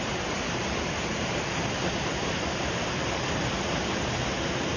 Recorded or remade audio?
remade